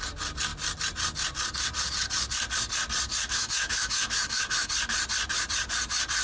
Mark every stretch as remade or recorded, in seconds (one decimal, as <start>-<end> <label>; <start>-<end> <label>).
0.0-3.1 recorded; 3.1-4.7 remade; 4.7-6.2 recorded

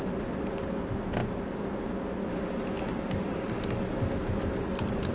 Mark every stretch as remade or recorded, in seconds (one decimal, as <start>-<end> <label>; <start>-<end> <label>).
0.0-5.1 recorded

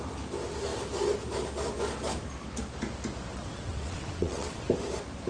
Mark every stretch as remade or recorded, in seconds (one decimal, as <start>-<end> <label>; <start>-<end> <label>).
0.0-3.3 recorded; 3.3-4.6 remade; 4.6-5.3 recorded

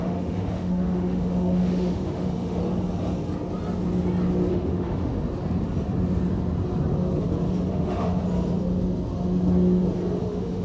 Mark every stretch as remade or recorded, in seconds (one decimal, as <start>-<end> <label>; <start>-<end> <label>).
0.0-2.6 remade; 2.6-4.5 recorded; 4.5-5.1 remade; 5.1-7.7 recorded; 7.7-8.2 remade; 8.2-10.2 recorded; 10.2-10.6 remade

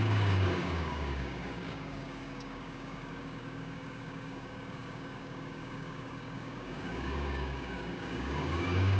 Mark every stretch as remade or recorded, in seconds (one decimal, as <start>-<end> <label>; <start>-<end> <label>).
0.0-9.0 remade

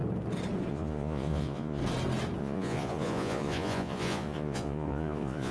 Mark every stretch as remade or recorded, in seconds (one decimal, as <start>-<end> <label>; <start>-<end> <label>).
0.0-0.7 recorded; 0.7-1.8 remade; 1.8-2.4 recorded; 2.4-5.5 remade